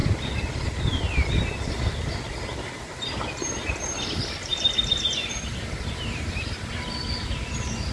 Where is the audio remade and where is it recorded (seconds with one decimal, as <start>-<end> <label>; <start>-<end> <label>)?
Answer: 0.0-7.9 recorded